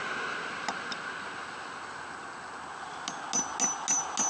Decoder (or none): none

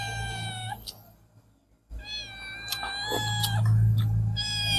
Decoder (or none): none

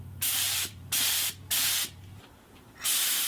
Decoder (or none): vocoder, BigVGAN v2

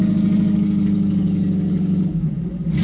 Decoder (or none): codec, DAC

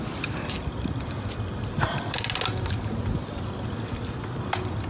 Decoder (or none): none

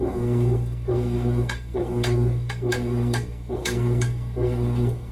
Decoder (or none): codec, SNAC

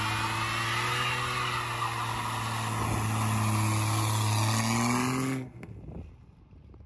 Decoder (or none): none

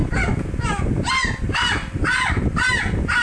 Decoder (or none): none